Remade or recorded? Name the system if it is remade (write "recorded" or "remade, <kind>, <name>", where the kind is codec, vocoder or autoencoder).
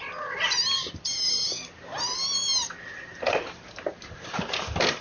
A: recorded